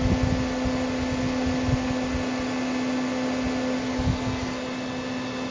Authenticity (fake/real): real